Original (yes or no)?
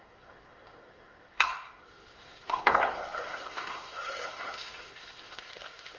no